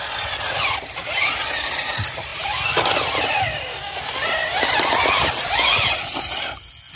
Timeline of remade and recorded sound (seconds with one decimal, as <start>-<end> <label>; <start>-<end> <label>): 0.0-2.3 recorded; 2.3-3.3 remade; 3.3-7.0 recorded